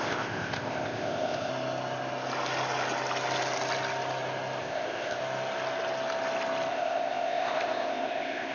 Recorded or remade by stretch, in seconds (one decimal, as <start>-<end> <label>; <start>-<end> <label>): 0.0-1.5 remade; 1.5-4.6 recorded; 4.6-5.2 remade; 5.2-6.7 recorded; 6.7-8.5 remade